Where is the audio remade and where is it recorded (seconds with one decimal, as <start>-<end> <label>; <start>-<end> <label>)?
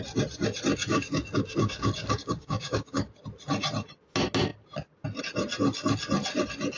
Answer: 0.0-0.9 recorded; 0.9-3.2 remade; 3.2-6.8 recorded